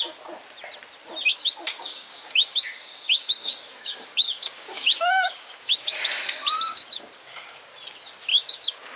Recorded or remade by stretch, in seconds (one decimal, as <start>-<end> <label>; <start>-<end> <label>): 0.0-1.3 recorded; 1.3-6.0 remade; 6.0-6.7 recorded; 6.7-7.6 remade; 7.6-8.3 recorded; 8.3-9.0 remade